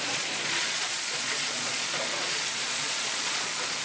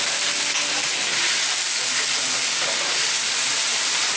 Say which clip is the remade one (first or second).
first